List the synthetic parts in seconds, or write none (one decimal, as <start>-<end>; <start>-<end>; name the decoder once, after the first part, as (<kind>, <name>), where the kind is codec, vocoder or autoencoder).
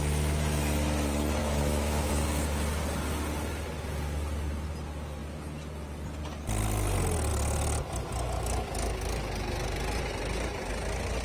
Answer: 1.4-2.1 (autoencoder, DAC-VAE)